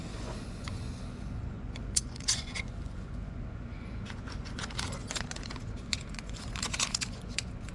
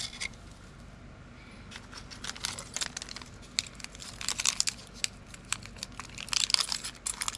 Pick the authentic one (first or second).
second